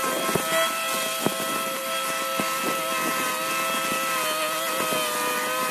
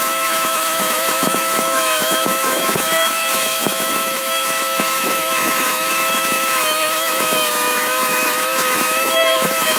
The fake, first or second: second